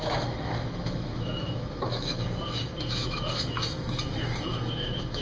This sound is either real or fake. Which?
fake